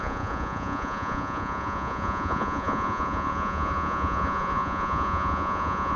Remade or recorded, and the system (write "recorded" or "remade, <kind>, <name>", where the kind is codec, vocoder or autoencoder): remade, vocoder, Vocos